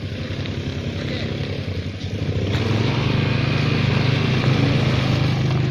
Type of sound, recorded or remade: recorded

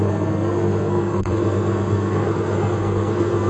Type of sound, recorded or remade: remade